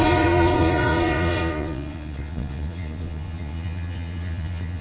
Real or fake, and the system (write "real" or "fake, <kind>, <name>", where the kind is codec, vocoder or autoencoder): fake, vocoder, Vocos